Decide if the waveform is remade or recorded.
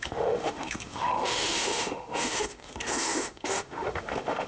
remade